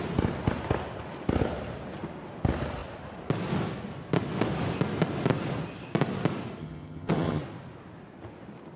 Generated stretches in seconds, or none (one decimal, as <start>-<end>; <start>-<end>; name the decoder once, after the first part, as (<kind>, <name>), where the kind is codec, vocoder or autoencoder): 6.6-7.4 (vocoder, HiFi-GAN)